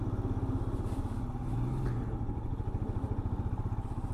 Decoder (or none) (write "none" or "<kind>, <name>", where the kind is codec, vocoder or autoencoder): none